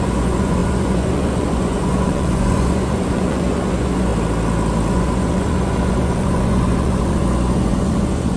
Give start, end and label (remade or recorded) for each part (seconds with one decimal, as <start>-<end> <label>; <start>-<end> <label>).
0.0-4.1 remade; 4.1-4.9 recorded; 4.9-8.4 remade

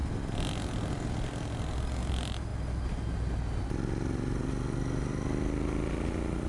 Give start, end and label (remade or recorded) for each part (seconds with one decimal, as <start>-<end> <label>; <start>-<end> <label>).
0.0-6.5 recorded

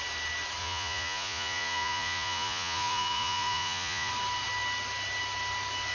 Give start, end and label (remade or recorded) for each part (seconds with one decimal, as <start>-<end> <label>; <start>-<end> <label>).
0.0-0.6 recorded; 0.6-4.1 remade; 4.1-5.9 recorded

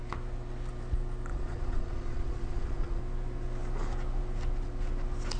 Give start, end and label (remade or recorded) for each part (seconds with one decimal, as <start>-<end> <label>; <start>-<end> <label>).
0.0-1.3 recorded; 1.3-3.0 remade; 3.0-5.4 recorded